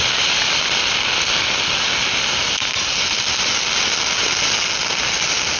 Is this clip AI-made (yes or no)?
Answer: no